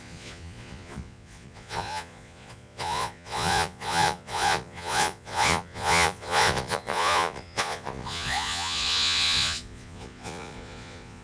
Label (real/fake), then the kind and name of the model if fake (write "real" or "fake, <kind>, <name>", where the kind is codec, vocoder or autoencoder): fake, vocoder, Vocos